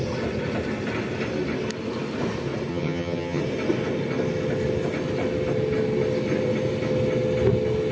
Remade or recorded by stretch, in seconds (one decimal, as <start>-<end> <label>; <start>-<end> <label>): 0.0-2.7 recorded; 2.7-3.4 remade; 3.4-7.9 recorded